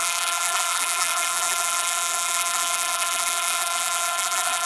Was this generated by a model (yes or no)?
yes